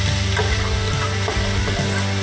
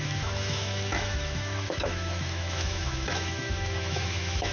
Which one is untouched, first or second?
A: first